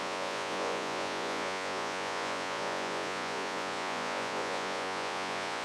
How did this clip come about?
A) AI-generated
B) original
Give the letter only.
A